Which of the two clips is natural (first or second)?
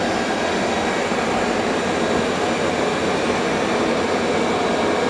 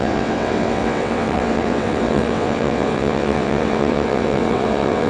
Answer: first